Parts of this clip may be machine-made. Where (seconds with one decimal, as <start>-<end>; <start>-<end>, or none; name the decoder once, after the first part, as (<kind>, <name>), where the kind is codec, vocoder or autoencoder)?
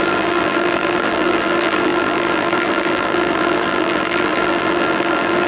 0.0-5.5 (vocoder, BigVGAN v2)